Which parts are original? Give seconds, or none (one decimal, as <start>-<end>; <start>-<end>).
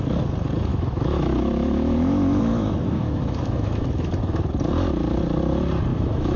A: 0.0-0.7; 4.5-5.9